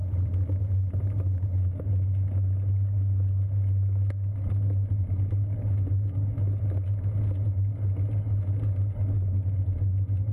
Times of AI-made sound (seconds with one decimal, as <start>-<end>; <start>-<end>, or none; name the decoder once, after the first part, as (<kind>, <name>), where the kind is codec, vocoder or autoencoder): 0.0-0.6 (vocoder, BigVGAN v2)